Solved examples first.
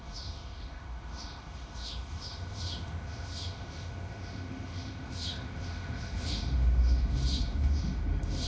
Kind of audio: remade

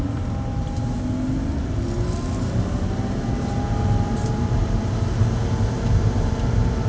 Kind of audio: recorded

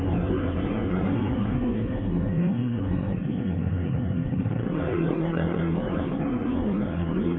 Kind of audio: remade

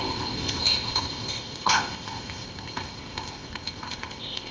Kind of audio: remade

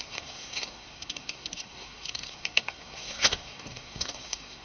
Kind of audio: remade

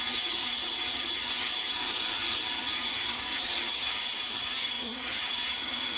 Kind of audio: remade